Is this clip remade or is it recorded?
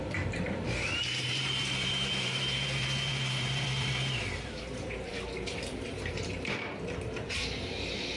remade